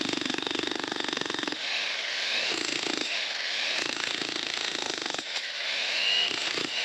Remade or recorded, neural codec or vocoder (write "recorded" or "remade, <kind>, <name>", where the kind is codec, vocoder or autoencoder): remade, autoencoder, DAC-VAE